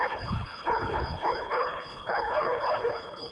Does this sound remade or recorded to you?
remade